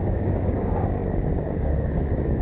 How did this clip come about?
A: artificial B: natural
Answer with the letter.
A